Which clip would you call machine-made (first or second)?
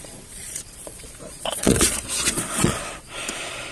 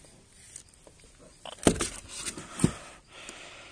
first